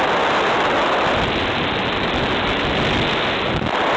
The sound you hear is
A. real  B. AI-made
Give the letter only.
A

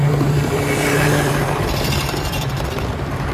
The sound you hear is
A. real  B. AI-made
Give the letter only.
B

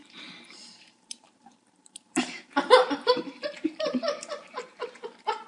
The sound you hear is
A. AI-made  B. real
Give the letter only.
A